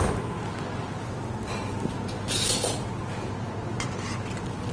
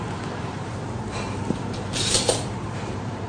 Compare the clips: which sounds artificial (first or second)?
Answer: second